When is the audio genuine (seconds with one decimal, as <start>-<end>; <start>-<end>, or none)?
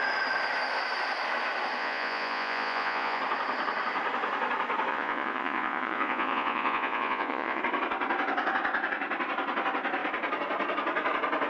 0.0-1.8; 3.2-4.9; 7.6-11.5